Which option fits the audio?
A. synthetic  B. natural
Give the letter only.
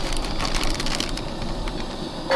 B